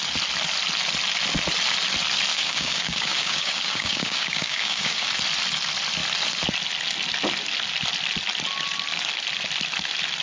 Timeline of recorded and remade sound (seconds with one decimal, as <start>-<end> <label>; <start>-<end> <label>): 0.0-2.3 recorded; 2.3-5.1 remade; 5.1-10.2 recorded